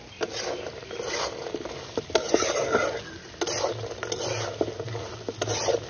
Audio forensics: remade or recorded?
recorded